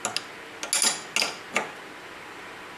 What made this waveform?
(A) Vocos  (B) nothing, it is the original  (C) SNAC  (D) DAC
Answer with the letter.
B